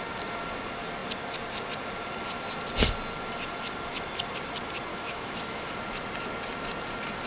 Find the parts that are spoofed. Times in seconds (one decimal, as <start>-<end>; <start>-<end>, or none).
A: 4.9-5.7